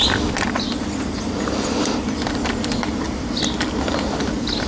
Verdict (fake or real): real